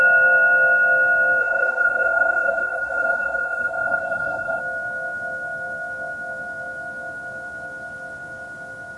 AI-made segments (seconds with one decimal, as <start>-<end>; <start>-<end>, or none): 1.4-4.6